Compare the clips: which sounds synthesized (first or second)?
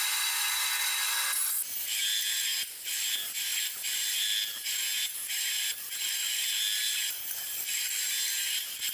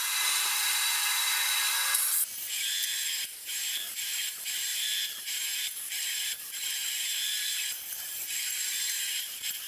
second